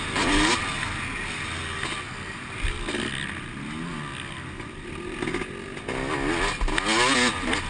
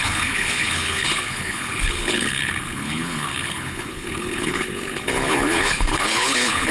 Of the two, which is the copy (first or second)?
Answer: second